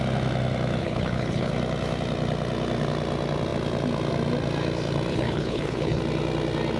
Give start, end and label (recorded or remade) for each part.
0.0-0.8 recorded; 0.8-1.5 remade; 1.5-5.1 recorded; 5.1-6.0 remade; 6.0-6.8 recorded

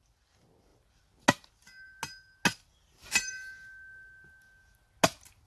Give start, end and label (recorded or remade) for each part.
0.0-5.5 recorded

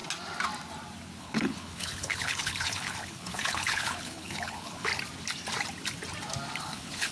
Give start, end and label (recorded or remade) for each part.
0.0-1.2 recorded; 1.2-4.9 remade; 4.9-6.6 recorded; 6.6-7.1 remade